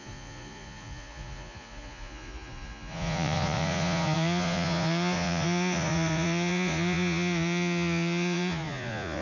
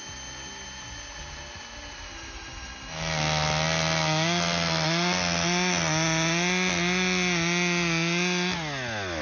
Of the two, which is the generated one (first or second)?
first